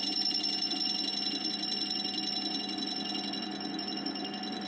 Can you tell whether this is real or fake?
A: real